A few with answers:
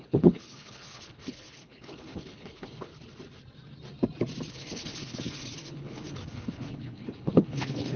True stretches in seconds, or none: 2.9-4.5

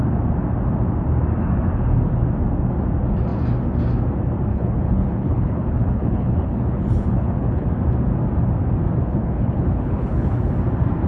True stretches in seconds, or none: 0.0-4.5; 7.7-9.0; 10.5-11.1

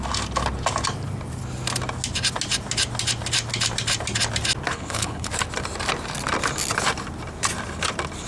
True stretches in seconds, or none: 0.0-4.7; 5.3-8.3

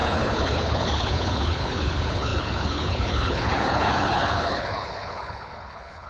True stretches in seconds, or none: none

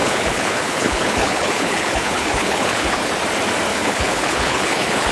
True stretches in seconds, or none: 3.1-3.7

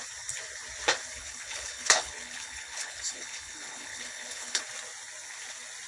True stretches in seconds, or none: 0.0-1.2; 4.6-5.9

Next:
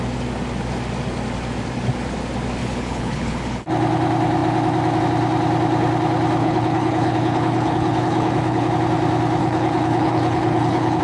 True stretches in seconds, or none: 0.0-2.6; 3.7-6.4; 8.7-9.4